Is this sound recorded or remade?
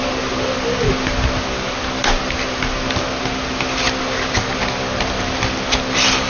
recorded